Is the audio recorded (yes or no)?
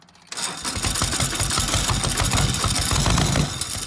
yes